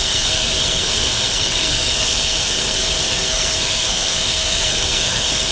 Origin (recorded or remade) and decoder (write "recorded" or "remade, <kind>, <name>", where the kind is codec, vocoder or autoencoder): remade, codec, SNAC